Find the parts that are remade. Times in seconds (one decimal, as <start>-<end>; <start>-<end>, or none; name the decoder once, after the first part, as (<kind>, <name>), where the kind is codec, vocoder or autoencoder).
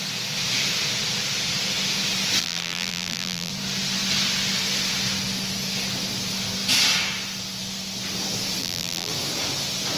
2.4-3.5 (vocoder, BigVGAN v2); 8.6-9.1